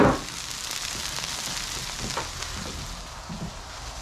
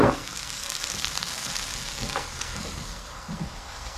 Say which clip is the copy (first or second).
second